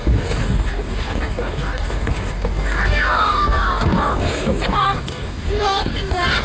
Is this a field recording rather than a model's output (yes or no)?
no